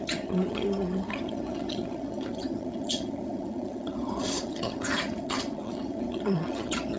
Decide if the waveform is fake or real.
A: fake